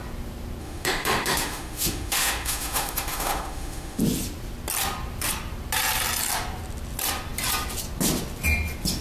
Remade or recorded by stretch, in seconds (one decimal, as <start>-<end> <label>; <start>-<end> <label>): 0.0-0.6 recorded; 0.6-4.0 remade; 4.0-9.0 recorded